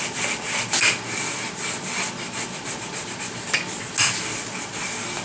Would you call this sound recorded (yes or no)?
yes